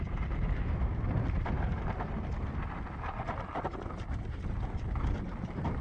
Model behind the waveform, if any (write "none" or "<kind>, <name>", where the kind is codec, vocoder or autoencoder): none